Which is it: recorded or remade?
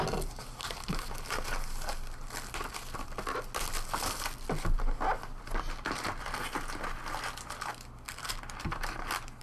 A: recorded